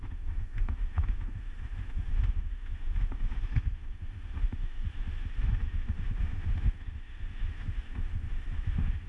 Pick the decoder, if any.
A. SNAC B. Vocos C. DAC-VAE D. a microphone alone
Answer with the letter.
C